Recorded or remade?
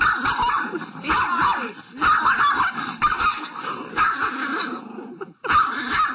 recorded